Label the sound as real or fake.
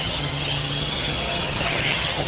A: fake